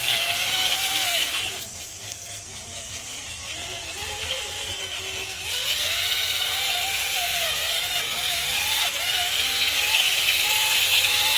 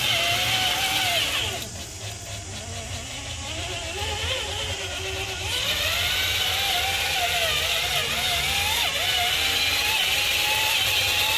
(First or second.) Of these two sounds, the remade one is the first